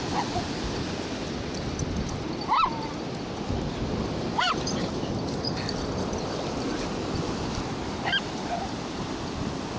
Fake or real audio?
real